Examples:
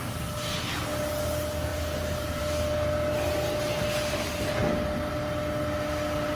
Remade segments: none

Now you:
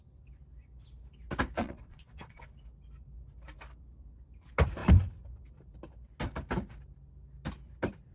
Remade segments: 1.6-2.4 (vocoder, Vocos)

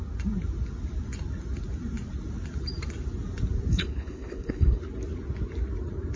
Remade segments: 3.7-4.8 (codec, HILCodec)

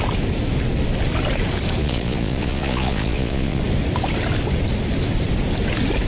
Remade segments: 1.8-3.6 (vocoder, Vocos)

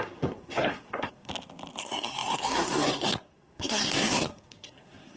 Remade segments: 0.0-1.3 (codec, SNAC); 1.8-5.2

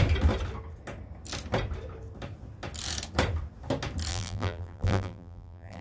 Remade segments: 4.1-5.8 (vocoder, BigVGAN v2)